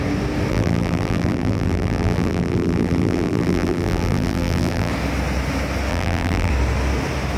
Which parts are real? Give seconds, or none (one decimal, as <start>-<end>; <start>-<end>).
0.0-0.5; 4.9-5.9; 6.5-7.4